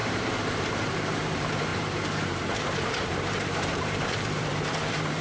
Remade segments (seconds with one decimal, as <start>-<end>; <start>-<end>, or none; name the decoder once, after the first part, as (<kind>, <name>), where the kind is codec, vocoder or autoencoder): 0.0-5.2 (vocoder, BigVGAN v2)